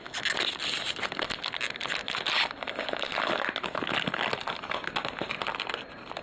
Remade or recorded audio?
recorded